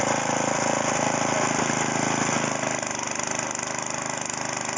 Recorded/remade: recorded